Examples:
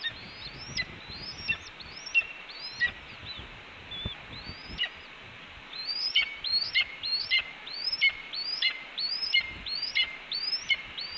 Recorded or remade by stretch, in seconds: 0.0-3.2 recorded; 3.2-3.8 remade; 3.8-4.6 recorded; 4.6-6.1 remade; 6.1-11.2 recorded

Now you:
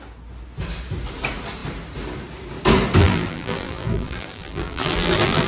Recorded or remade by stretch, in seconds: 0.0-3.0 recorded; 3.0-5.5 remade